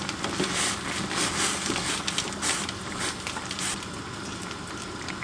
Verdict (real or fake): real